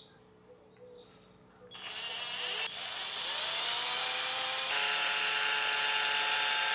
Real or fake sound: real